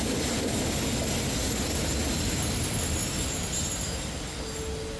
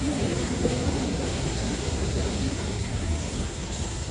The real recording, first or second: first